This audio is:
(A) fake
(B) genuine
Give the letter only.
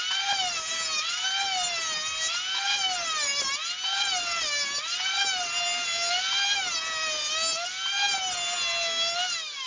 B